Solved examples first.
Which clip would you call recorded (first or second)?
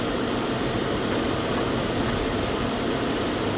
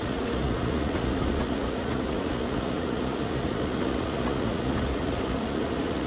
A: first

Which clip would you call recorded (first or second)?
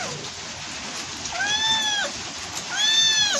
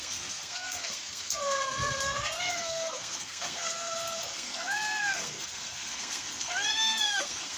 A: first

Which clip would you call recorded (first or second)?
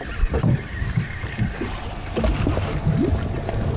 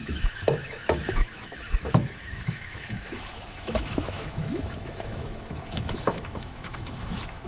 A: first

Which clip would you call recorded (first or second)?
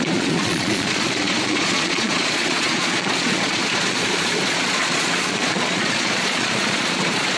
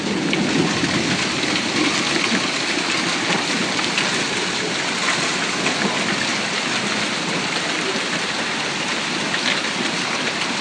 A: second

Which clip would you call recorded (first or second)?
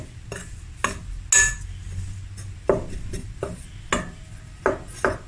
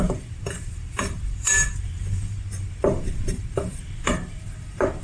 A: first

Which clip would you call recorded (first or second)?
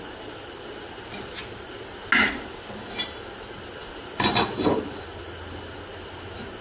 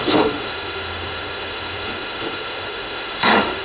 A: first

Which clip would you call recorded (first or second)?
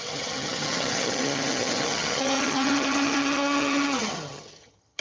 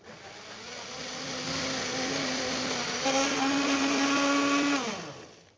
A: second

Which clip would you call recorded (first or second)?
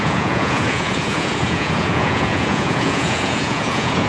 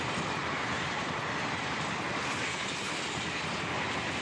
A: second